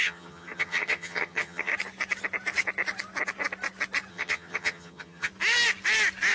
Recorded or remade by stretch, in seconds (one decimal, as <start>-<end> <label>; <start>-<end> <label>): 0.0-1.7 remade; 1.7-4.1 recorded; 4.1-5.3 remade; 5.3-6.3 recorded

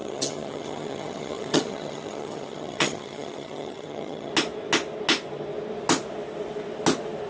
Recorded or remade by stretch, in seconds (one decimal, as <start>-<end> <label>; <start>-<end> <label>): 0.0-4.3 remade; 4.3-7.3 recorded